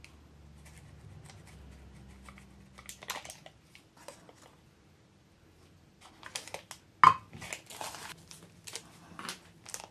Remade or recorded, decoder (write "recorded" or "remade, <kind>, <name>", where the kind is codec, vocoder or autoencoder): recorded